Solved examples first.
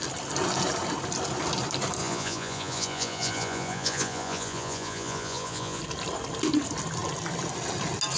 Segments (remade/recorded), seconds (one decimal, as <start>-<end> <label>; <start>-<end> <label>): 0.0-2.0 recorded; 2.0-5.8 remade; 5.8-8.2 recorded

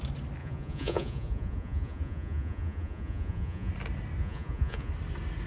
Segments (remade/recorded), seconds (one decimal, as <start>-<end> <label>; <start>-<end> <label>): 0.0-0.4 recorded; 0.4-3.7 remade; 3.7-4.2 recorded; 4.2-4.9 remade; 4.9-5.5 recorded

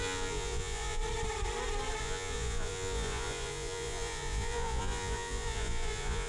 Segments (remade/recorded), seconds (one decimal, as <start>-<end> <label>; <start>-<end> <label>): 0.0-1.0 remade; 1.0-2.0 recorded; 2.0-6.3 remade